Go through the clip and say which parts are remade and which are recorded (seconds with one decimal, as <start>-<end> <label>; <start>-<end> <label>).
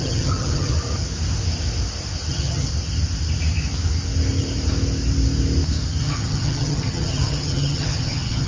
0.0-0.7 remade; 0.7-2.3 recorded; 2.3-2.7 remade; 2.7-6.0 recorded; 6.0-8.5 remade